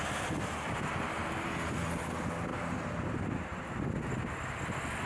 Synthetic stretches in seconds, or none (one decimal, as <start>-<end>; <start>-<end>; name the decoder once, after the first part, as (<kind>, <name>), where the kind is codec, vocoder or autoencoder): none